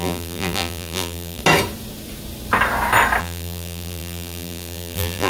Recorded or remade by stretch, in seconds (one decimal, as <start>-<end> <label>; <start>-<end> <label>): 0.0-1.4 remade; 1.4-3.2 recorded; 3.2-5.3 remade